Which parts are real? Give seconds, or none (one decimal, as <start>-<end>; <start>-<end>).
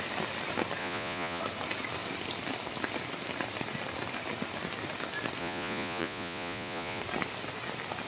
0.0-0.8; 1.4-5.4; 7.0-8.1